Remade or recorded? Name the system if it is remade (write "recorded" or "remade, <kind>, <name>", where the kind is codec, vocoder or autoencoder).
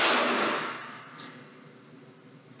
recorded